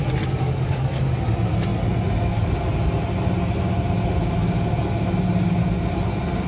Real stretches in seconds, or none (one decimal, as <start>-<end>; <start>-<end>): 0.0-6.5

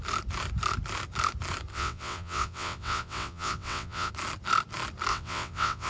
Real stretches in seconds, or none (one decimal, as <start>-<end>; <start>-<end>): 0.0-1.7; 4.1-5.1

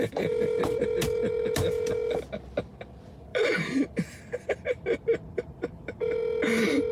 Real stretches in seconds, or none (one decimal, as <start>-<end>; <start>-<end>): 0.0-3.3; 6.2-6.9

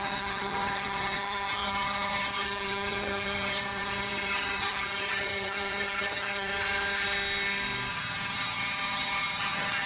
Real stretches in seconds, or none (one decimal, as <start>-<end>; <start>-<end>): 6.5-7.9

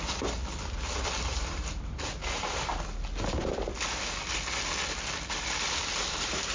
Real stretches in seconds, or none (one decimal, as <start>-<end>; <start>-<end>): 0.4-1.2; 2.2-6.1

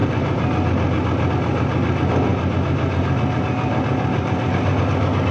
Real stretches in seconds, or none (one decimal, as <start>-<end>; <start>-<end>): 0.0-5.3